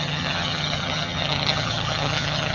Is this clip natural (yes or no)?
no